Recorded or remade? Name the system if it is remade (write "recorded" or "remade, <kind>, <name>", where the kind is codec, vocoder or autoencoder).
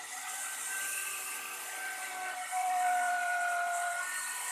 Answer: remade, vocoder, BigVGAN v2